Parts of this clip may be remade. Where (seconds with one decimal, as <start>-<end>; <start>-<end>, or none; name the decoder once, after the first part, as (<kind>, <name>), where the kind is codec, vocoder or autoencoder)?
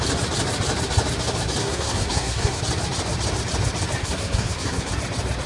1.6-2.6 (codec, SNAC); 4.0-4.9